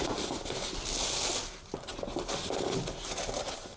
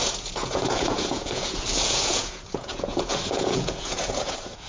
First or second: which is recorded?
first